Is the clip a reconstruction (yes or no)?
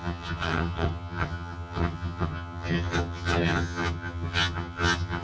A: yes